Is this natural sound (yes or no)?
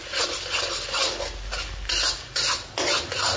yes